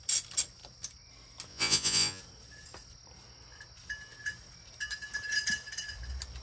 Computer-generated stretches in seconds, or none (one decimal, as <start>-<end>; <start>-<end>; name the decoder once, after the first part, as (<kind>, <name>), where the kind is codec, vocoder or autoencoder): 1.5-2.2 (vocoder, Vocos)